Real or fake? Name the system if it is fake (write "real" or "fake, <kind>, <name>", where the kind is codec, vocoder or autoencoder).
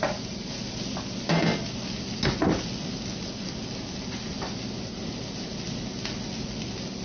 real